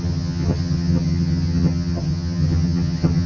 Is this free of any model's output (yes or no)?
no